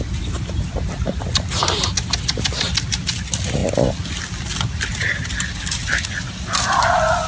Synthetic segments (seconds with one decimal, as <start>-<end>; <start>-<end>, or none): none